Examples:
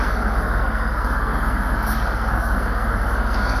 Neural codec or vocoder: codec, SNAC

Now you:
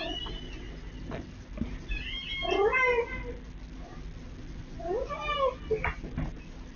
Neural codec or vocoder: none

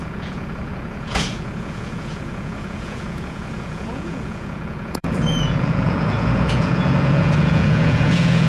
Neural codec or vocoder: vocoder, Vocos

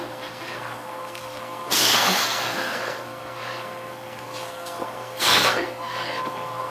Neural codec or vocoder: codec, SNAC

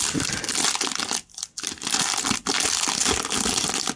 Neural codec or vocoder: none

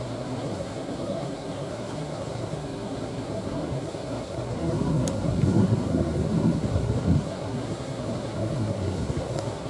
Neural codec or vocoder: codec, SNAC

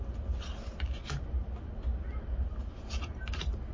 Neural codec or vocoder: none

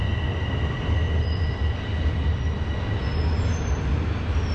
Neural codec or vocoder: none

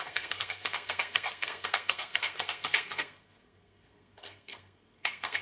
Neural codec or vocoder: codec, SNAC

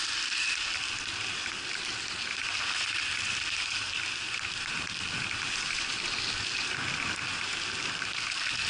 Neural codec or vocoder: none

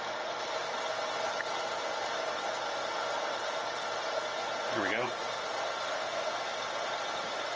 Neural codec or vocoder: none